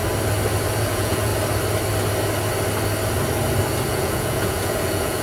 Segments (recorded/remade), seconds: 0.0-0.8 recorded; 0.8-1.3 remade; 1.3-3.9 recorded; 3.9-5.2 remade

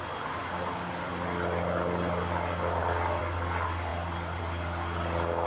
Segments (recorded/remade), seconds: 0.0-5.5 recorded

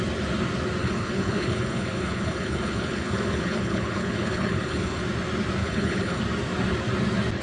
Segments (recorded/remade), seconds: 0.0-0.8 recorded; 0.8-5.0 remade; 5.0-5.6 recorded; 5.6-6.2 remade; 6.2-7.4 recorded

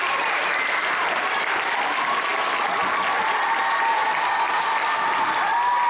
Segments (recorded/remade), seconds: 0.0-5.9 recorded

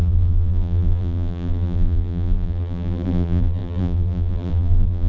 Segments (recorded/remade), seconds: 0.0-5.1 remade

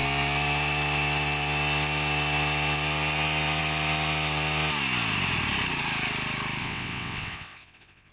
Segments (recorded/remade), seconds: 0.0-6.6 recorded; 6.6-8.1 remade

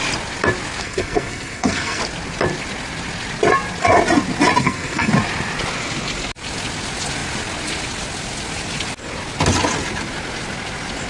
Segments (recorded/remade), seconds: 0.0-0.8 recorded; 0.8-2.0 remade; 2.0-4.6 recorded; 4.6-5.1 remade; 5.1-11.1 recorded